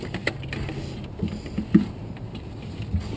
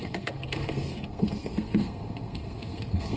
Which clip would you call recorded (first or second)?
first